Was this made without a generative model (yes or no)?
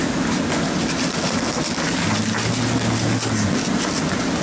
yes